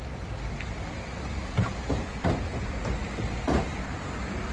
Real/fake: real